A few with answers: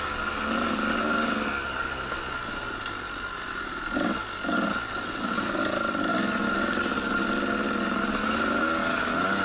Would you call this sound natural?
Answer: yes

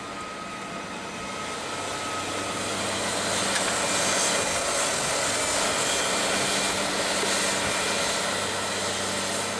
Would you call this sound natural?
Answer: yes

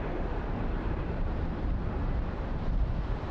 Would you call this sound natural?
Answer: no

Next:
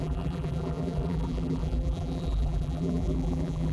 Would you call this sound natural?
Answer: no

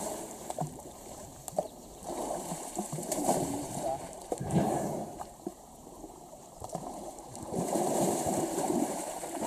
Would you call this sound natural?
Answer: no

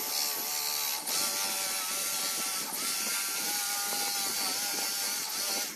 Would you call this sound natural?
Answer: yes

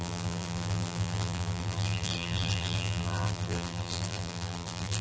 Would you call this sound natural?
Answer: no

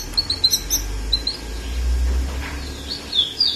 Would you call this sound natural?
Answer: yes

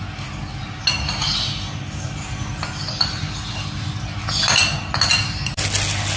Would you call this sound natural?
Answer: yes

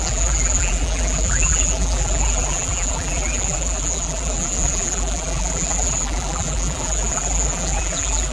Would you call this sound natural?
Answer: no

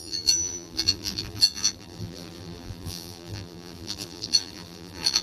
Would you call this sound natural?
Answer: no